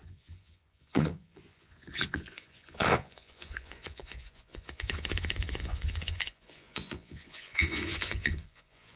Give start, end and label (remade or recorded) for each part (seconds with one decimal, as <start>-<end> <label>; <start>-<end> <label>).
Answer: 0.0-9.0 remade